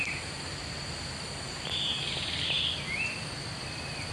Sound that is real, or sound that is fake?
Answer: real